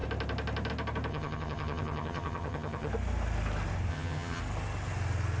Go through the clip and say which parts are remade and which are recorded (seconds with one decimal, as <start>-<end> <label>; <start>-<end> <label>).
0.0-1.1 recorded; 1.1-2.9 remade; 2.9-3.9 recorded; 3.9-4.4 remade; 4.4-5.4 recorded